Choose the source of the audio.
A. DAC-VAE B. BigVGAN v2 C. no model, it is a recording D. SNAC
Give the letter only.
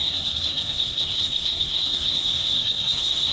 D